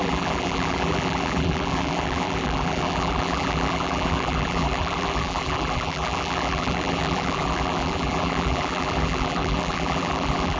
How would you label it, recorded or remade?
remade